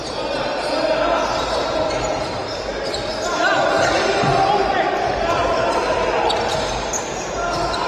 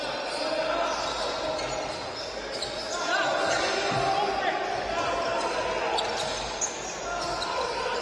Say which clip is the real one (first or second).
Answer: second